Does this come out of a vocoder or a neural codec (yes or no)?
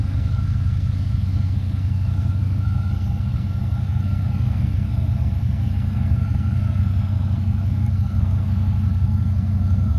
yes